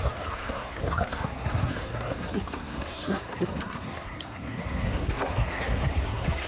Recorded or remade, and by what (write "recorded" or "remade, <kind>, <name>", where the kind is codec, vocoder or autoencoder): remade, codec, SNAC